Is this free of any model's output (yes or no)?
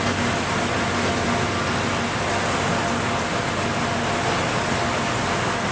yes